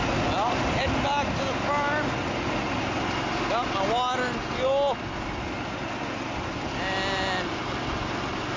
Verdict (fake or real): real